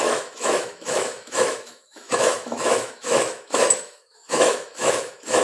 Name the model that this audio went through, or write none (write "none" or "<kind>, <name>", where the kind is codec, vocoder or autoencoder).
autoencoder, DAC-VAE